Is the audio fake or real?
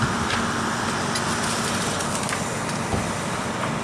real